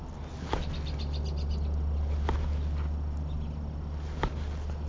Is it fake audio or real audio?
real